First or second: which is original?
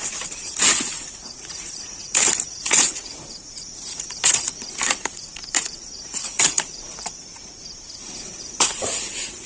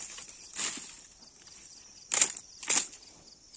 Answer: second